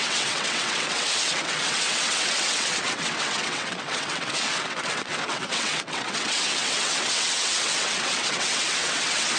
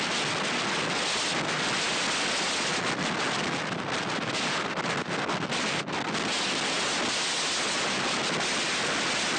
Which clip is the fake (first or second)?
first